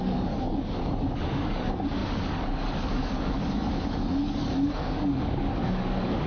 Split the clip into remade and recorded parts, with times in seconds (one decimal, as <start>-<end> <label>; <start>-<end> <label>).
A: 0.0-6.3 remade